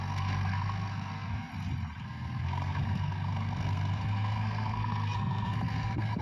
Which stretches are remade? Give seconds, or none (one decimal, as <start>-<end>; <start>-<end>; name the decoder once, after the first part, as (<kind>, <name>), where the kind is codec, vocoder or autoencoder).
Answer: 0.0-1.5 (codec, SNAC); 2.0-6.2